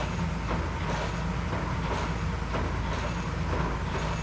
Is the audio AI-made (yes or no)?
no